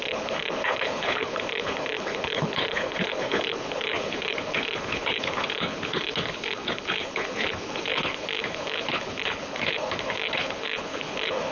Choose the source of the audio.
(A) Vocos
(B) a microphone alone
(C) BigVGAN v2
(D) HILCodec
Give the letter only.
D